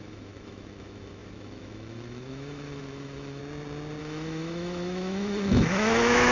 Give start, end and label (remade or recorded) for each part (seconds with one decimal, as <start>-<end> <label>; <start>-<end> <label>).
0.0-3.4 remade; 3.4-4.0 recorded; 4.0-6.3 remade